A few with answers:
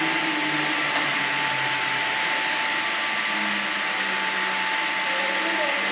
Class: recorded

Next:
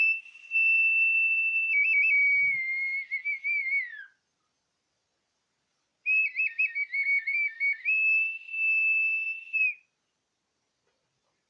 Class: recorded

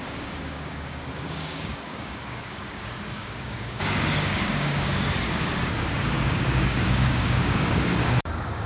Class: remade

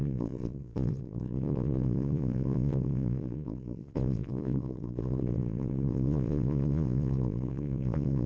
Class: remade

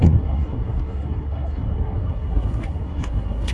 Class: remade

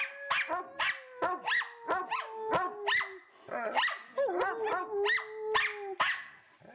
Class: recorded